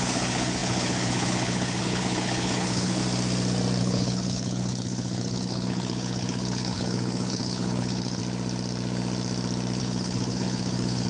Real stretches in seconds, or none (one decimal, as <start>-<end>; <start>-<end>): 3.0-3.8; 8.2-9.8